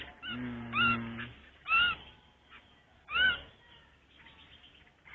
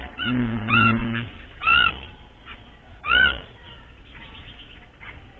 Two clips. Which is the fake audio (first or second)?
second